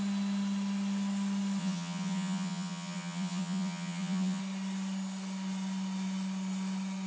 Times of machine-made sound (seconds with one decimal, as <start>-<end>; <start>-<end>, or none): 1.6-4.4